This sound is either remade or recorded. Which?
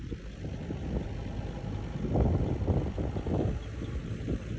recorded